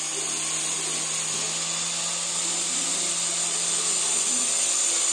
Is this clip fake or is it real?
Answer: real